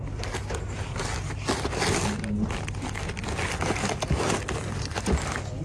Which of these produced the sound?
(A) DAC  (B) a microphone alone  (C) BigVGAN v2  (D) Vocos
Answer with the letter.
B